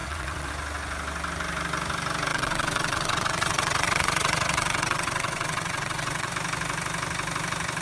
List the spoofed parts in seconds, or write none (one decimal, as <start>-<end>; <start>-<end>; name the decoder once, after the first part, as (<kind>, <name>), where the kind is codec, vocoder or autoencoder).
0.0-0.5 (vocoder, WaveNeXt); 2.3-6.3